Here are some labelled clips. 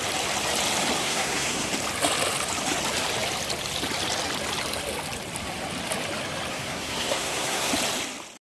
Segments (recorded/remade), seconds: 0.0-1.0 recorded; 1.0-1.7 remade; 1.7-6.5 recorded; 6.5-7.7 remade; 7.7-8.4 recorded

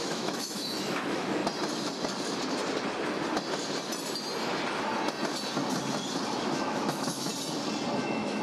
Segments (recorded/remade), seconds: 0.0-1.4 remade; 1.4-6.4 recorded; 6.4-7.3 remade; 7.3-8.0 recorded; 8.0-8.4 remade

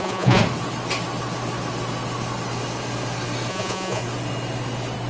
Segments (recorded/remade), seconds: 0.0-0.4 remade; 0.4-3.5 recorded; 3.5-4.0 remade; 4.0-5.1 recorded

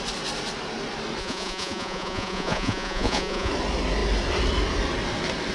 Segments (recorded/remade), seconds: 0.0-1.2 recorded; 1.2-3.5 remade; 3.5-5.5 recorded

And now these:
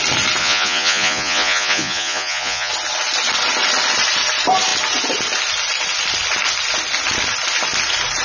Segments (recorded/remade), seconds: 0.0-0.4 recorded; 0.4-2.7 remade; 2.7-8.2 recorded